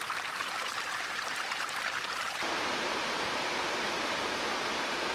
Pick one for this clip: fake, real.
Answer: fake